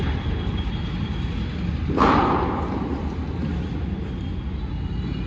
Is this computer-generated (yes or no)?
no